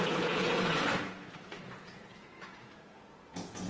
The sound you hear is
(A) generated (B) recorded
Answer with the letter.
A